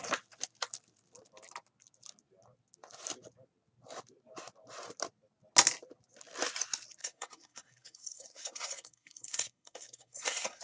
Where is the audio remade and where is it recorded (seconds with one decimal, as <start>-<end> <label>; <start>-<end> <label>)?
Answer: 0.0-7.0 recorded; 7.0-10.6 remade